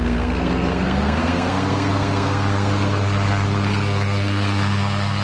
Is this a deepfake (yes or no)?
yes